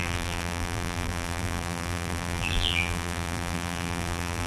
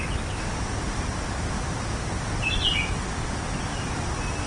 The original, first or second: second